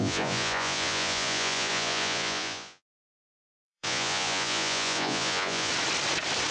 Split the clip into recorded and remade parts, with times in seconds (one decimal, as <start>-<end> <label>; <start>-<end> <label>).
0.0-5.7 remade; 5.7-6.5 recorded